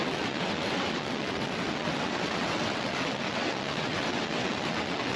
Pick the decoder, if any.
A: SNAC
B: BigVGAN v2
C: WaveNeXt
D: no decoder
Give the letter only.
C